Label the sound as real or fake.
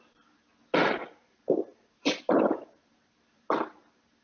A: real